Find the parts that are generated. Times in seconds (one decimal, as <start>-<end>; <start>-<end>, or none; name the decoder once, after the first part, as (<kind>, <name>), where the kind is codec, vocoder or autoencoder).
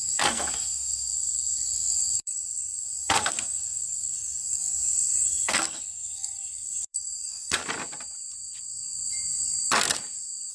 0.0-7.6 (codec, SNAC)